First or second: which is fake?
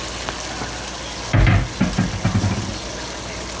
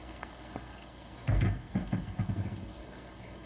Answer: second